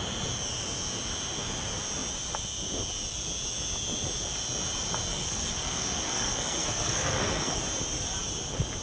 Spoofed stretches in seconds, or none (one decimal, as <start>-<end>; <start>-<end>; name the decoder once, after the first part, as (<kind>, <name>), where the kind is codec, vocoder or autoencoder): 5.1-7.6 (codec, SNAC)